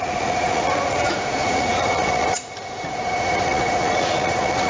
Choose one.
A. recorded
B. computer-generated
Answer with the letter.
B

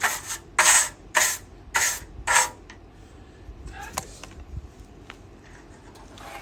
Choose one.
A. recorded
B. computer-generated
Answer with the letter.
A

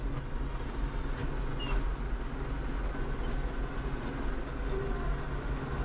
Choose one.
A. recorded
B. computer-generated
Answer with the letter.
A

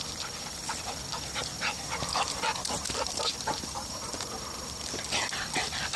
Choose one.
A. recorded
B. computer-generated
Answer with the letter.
A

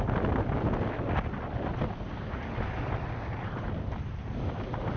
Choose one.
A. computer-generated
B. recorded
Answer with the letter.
B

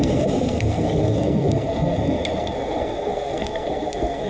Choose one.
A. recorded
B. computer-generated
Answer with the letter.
B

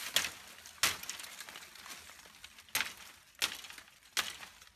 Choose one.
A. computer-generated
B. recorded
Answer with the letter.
B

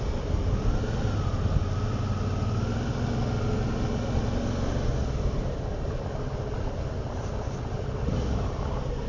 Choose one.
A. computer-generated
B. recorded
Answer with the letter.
B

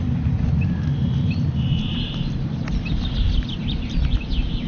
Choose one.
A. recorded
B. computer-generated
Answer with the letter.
A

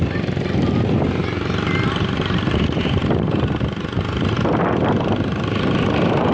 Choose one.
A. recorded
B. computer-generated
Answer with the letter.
A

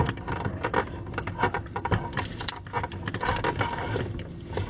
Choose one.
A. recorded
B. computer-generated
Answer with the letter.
A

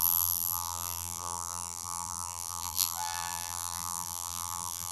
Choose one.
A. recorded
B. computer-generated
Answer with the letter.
B